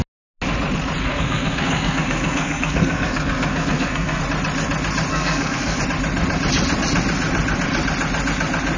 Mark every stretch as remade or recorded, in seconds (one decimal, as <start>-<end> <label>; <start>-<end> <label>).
0.0-1.0 recorded; 1.0-4.2 remade; 4.2-5.1 recorded; 5.1-5.8 remade; 5.8-8.8 recorded